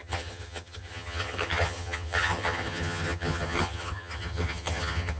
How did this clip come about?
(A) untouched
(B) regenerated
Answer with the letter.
B